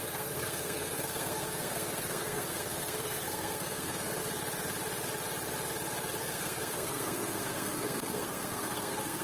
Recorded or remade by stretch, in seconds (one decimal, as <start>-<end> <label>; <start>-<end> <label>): 0.0-4.2 remade; 4.2-6.2 recorded; 6.2-9.2 remade